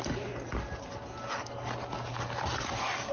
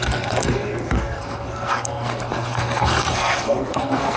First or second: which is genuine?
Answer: first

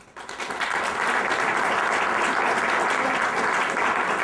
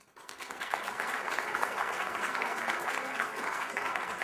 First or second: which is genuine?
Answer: first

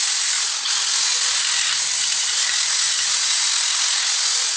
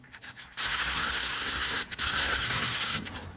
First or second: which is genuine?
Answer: first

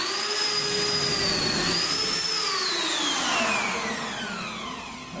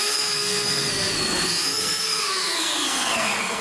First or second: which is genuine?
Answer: first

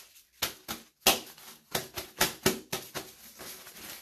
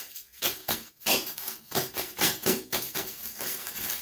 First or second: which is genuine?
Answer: first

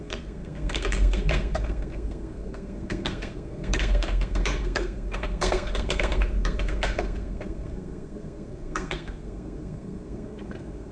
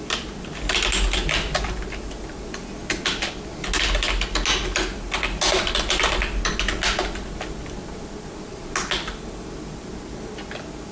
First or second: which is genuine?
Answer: second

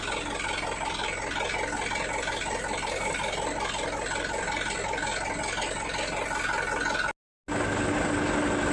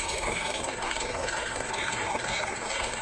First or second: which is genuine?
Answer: first